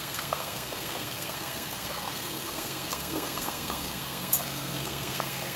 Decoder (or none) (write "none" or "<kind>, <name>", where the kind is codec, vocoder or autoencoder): codec, SNAC